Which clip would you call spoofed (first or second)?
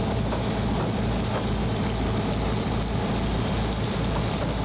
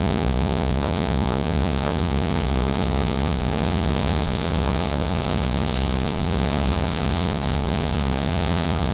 second